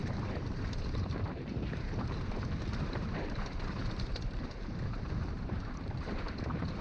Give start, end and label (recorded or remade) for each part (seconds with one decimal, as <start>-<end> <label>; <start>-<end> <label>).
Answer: 0.0-6.8 remade